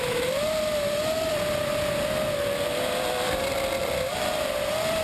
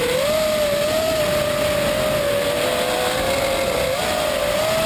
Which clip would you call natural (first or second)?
second